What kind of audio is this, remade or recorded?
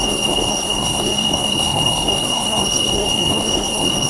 remade